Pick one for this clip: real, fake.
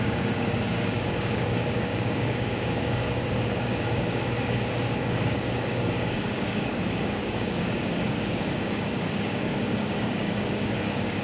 fake